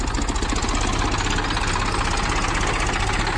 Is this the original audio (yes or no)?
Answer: yes